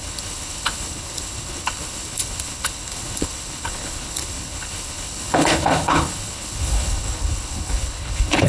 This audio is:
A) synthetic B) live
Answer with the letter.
A